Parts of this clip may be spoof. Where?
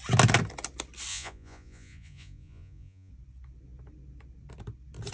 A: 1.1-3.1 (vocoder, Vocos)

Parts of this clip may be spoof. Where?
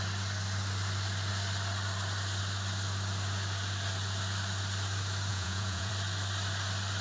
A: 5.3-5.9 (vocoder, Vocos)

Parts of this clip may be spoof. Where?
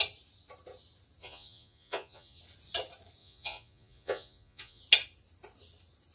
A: 1.2-2.4 (vocoder, Vocos); 3.2-4.8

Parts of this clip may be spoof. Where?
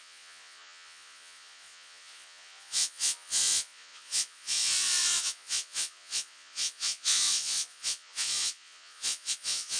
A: 0.0-9.8 (vocoder, Vocos)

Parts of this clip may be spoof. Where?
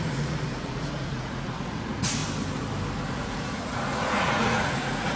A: 0.0-2.2 (vocoder, Vocos); 3.1-5.2